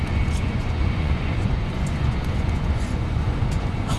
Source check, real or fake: fake